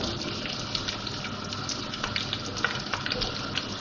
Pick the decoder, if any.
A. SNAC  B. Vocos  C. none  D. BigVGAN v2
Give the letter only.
C